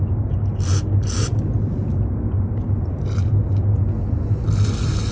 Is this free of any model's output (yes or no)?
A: yes